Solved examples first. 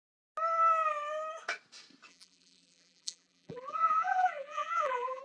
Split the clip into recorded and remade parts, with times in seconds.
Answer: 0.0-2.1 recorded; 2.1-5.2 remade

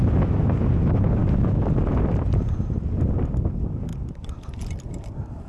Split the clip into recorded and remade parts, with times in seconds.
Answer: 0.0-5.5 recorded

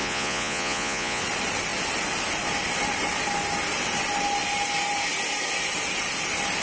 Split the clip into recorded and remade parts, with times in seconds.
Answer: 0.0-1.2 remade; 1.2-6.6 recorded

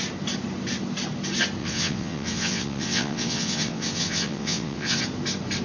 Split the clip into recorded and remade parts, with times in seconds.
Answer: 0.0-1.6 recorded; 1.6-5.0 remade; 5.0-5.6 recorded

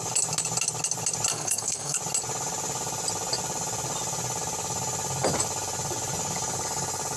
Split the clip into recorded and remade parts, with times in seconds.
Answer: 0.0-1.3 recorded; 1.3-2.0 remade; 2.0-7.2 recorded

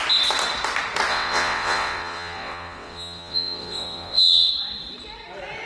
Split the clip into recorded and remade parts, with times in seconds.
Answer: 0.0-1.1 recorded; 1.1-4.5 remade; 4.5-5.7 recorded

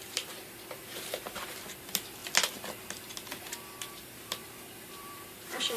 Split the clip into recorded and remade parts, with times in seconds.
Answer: 0.0-2.2 remade; 2.2-3.9 recorded; 3.9-5.8 remade

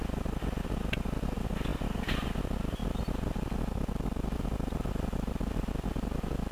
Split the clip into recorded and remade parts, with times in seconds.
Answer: 0.0-6.5 recorded